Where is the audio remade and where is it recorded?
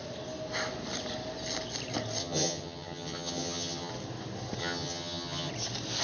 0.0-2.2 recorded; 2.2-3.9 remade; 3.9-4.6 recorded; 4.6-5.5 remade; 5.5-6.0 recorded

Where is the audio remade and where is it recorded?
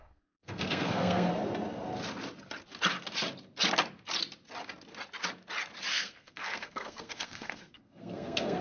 0.0-1.3 remade; 1.3-5.9 recorded; 5.9-8.6 remade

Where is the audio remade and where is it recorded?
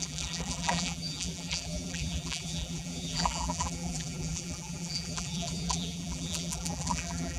0.0-7.4 remade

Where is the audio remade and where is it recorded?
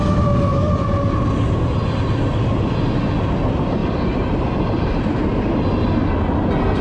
0.0-0.5 recorded; 0.5-1.1 remade; 1.1-3.8 recorded; 3.8-5.0 remade; 5.0-6.8 recorded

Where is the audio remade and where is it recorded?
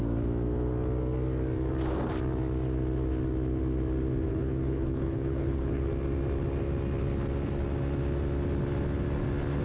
0.0-4.3 recorded; 4.3-5.9 remade; 5.9-9.6 recorded